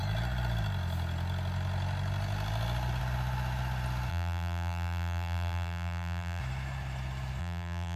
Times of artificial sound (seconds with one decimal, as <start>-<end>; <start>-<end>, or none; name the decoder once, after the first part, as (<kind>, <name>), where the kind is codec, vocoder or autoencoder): 4.1-6.4 (vocoder, BigVGAN v2); 7.4-8.0